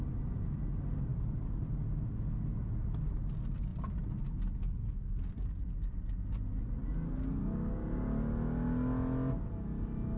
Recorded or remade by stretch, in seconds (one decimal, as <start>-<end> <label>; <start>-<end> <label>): 0.0-10.2 recorded